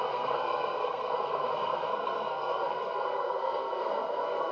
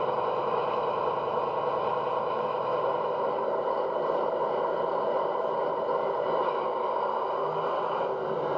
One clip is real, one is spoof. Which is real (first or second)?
second